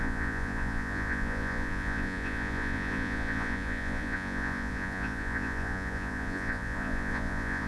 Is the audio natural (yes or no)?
no